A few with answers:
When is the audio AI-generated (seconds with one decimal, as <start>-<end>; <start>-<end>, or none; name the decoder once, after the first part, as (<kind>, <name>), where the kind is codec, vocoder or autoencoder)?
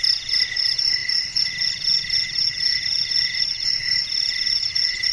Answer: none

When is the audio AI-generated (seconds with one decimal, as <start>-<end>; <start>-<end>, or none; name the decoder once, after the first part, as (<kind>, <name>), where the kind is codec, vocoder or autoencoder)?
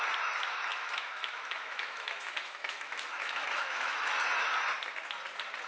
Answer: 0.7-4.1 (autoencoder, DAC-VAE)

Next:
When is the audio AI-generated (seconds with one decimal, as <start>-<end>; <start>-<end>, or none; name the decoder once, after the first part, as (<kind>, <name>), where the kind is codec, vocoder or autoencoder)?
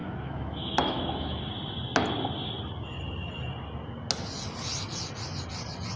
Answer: 0.0-1.4 (autoencoder, DAC-VAE)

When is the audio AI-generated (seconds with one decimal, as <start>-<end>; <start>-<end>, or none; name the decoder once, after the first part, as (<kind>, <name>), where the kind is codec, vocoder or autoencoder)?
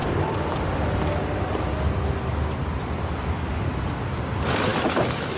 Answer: 4.7-5.4 (autoencoder, DAC-VAE)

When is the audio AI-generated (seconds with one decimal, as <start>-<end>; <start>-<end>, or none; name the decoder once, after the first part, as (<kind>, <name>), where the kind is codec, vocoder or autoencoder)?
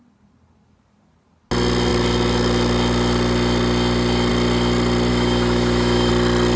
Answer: 5.1-6.1 (autoencoder, DAC-VAE)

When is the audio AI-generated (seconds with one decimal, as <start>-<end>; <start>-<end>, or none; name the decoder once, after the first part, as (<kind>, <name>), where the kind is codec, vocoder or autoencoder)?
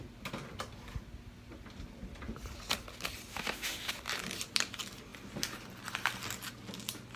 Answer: 3.3-3.9 (autoencoder, DAC-VAE)